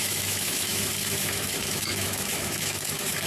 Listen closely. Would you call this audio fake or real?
fake